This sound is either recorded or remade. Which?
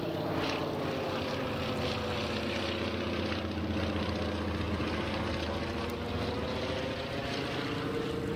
recorded